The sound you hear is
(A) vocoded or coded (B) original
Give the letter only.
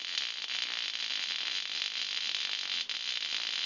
B